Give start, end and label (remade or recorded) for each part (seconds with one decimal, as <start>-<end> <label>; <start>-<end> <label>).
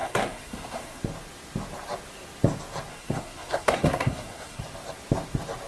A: 0.0-1.0 remade; 1.0-2.9 recorded; 2.9-4.6 remade; 4.6-5.7 recorded